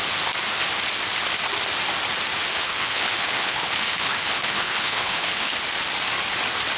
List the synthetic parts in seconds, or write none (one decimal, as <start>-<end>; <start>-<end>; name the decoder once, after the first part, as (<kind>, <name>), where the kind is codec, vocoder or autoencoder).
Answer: 2.5-5.6 (codec, HILCodec)